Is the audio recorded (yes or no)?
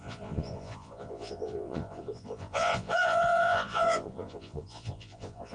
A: no